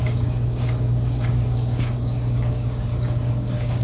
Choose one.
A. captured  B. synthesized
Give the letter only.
B